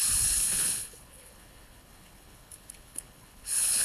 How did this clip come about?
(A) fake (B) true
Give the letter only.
A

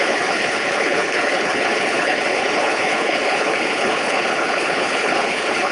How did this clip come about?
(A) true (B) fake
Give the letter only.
B